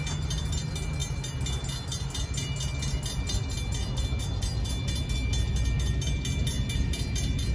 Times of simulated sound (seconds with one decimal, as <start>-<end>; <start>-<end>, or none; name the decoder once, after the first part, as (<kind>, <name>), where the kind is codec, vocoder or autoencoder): none